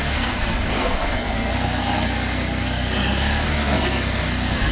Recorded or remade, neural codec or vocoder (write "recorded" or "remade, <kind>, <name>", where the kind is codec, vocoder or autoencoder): remade, codec, SNAC